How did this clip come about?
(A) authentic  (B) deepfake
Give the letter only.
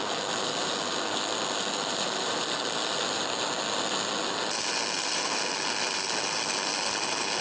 A